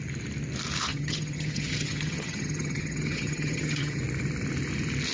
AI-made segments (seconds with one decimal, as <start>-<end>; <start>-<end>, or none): 0.9-4.0